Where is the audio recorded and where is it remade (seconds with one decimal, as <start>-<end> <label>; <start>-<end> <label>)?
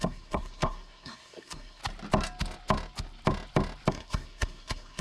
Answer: 0.0-1.8 remade; 1.8-3.9 recorded; 3.9-5.0 remade